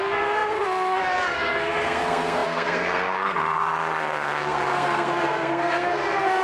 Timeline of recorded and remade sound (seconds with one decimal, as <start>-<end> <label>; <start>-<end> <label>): 0.0-6.4 remade